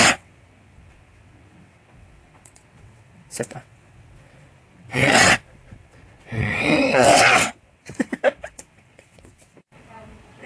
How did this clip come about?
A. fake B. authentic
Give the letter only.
A